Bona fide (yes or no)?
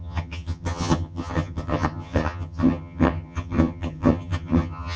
no